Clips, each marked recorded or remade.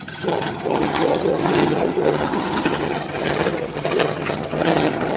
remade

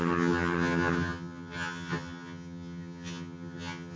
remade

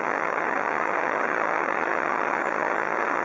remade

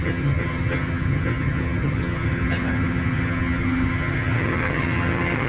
remade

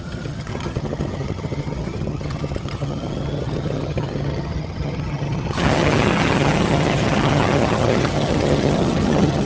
remade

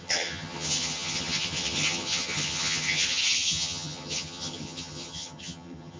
remade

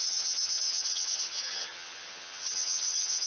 remade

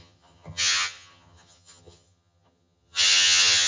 remade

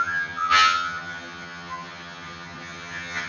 remade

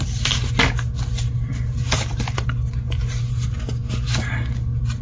recorded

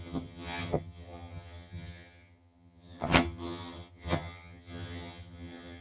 remade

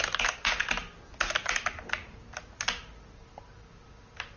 recorded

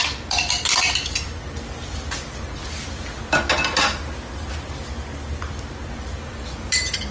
recorded